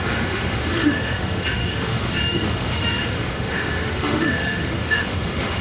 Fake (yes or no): yes